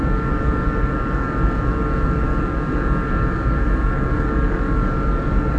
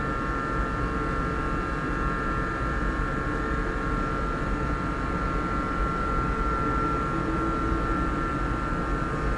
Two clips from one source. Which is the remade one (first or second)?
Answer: first